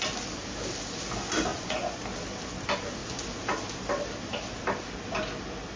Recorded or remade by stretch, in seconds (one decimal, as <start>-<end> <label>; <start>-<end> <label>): 0.0-1.5 recorded; 1.5-2.0 remade; 2.0-5.8 recorded